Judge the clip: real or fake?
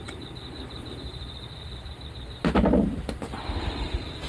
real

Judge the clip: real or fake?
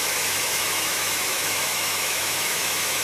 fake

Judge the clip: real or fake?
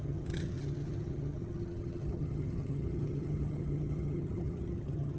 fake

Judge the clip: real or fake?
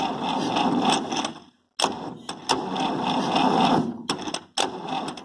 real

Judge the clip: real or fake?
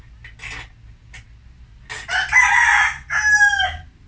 real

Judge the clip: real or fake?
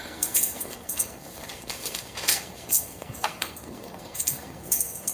fake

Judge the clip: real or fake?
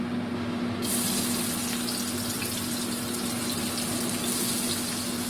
real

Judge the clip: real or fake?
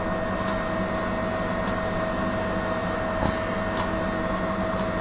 real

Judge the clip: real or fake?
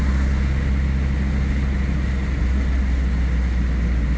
real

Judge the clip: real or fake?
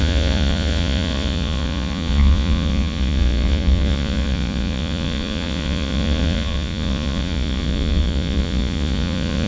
fake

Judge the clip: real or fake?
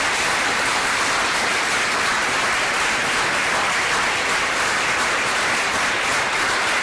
real